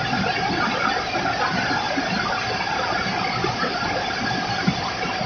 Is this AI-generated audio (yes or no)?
no